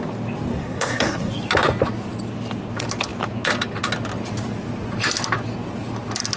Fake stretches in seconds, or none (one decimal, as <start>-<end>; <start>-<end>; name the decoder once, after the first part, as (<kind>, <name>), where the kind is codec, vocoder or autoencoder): 0.5-1.3 (codec, SNAC)